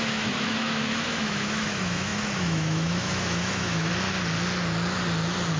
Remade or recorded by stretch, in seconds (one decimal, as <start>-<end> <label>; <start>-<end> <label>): 0.0-3.9 remade; 3.9-5.6 recorded